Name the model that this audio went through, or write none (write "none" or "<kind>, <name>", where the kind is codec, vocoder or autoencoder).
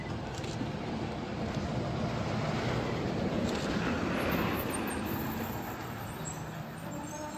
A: none